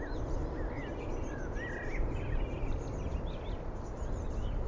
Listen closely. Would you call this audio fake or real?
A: real